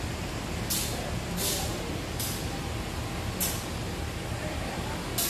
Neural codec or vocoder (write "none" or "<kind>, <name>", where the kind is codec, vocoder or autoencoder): none